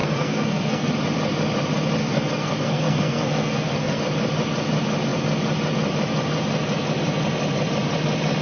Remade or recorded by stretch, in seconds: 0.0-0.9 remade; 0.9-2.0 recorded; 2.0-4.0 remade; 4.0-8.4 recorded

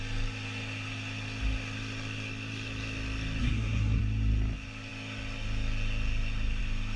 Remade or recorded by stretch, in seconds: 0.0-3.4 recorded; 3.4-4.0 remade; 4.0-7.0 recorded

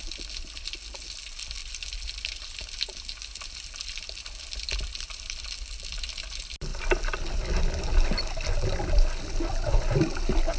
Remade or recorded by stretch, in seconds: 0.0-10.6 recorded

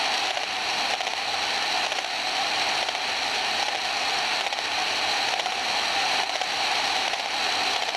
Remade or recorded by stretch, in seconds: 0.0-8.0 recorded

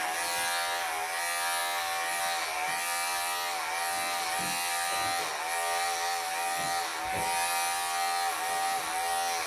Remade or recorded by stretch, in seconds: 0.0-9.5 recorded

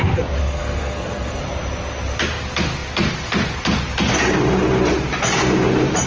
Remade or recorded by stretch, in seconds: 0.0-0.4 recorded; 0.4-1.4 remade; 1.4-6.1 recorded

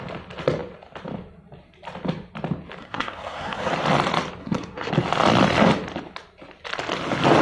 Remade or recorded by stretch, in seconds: 0.0-2.8 recorded; 2.8-3.7 remade; 3.7-4.4 recorded; 4.4-4.9 remade; 4.9-7.4 recorded